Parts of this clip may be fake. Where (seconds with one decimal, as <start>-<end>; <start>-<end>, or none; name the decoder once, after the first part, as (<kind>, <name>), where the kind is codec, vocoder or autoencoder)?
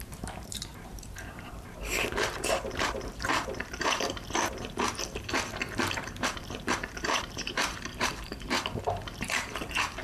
0.0-10.0 (vocoder, BigVGAN v2)